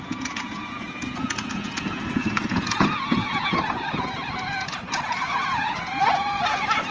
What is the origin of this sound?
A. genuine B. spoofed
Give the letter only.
B